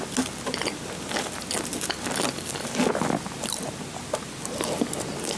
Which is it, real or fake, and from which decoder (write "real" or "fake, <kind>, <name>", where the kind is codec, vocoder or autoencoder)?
real